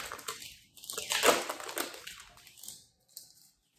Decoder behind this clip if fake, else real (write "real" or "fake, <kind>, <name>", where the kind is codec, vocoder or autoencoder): real